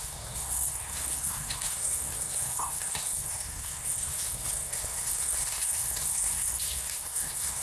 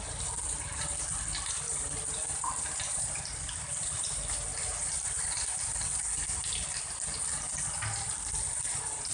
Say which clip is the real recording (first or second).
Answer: second